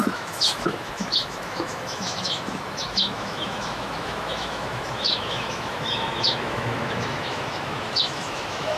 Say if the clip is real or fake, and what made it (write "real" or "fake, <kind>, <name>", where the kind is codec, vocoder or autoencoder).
fake, autoencoder, DAC-VAE